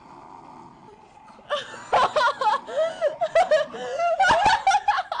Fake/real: real